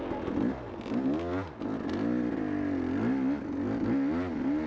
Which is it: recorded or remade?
recorded